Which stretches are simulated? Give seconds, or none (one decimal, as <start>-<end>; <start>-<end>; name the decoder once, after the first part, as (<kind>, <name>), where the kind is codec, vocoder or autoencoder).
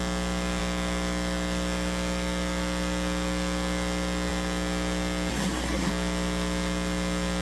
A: 5.3-5.9 (codec, SNAC)